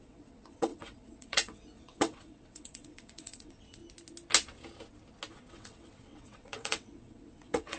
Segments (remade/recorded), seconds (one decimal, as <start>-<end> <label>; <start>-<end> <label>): 0.0-3.8 remade; 3.8-5.5 recorded; 5.5-7.8 remade